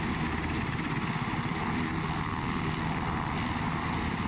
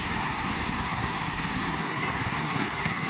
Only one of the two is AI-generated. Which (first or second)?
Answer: second